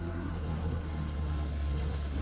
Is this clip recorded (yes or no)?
no